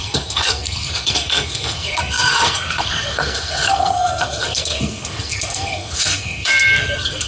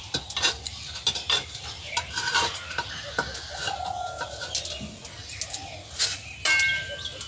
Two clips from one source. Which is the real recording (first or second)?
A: second